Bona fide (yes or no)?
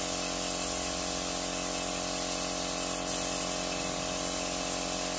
yes